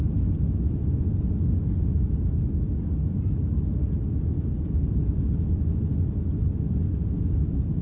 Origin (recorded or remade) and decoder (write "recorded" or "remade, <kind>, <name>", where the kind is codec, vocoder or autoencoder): recorded